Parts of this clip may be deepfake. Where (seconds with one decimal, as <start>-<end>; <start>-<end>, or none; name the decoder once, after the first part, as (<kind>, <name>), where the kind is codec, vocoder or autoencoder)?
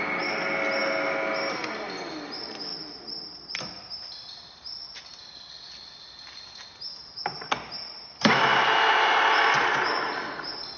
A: none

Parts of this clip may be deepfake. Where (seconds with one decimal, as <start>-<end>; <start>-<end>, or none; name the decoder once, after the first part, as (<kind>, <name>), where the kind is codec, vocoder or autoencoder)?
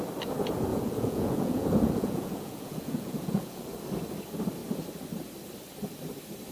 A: 0.7-3.6 (vocoder, Vocos)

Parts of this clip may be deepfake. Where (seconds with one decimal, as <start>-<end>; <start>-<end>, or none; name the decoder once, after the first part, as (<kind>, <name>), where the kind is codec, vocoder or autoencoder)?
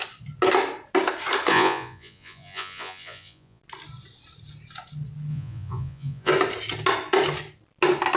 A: 1.5-3.6 (vocoder, Vocos); 5.3-6.3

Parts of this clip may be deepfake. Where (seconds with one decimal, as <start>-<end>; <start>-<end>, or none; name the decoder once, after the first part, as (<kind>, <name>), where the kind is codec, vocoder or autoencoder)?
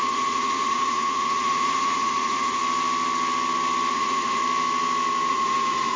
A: 0.0-2.6 (vocoder, Vocos); 3.9-4.4; 5.3-6.0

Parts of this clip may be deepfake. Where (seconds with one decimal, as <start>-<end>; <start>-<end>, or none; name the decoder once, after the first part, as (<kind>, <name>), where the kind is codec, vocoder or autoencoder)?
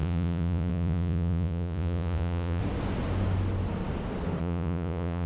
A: 0.0-2.6 (vocoder, Vocos); 4.4-5.3